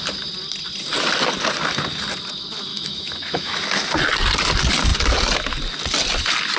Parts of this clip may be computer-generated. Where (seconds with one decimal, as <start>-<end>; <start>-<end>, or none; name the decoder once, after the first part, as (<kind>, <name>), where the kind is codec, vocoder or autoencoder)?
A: 2.7-3.6 (autoencoder, DAC-VAE)